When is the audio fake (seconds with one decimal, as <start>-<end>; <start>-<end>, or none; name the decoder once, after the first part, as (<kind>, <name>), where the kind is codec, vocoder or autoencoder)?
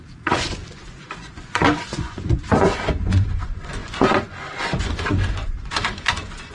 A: 0.0-6.5 (vocoder, Vocos)